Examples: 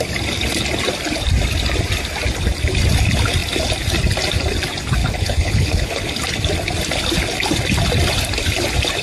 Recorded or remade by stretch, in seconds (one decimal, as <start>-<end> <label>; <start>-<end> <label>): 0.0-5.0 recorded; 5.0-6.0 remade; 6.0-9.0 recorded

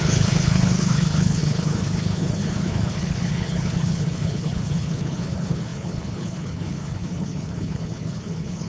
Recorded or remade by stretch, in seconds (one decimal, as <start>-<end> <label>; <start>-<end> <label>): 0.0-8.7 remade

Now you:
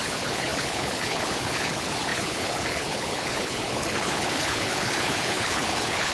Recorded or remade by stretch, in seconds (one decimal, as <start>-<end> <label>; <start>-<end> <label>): 0.0-6.1 remade

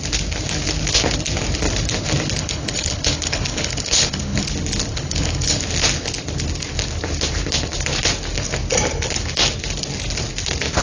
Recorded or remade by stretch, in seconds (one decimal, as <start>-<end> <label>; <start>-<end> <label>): 0.0-2.4 recorded; 2.4-4.5 remade; 4.5-4.9 recorded; 4.9-5.6 remade; 5.6-10.8 recorded

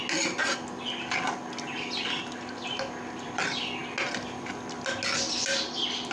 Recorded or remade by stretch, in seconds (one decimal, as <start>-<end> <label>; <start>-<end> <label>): 0.0-6.1 recorded

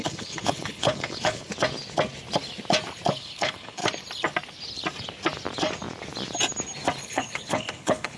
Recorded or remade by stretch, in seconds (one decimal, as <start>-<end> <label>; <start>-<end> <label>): 0.0-1.5 remade; 1.5-3.1 recorded; 3.1-3.8 remade; 3.8-7.0 recorded; 7.0-8.2 remade